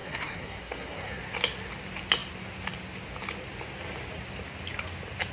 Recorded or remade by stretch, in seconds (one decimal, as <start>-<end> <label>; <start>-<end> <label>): 0.0-1.2 remade; 1.2-5.3 recorded